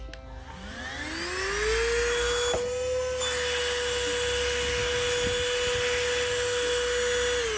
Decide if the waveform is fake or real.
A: real